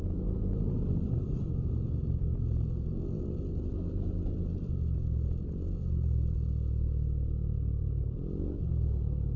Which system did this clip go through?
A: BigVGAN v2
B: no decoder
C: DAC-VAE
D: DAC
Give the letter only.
B